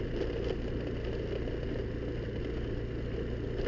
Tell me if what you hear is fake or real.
real